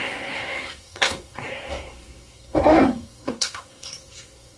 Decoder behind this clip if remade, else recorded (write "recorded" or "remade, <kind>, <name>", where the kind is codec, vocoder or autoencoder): remade, codec, SNAC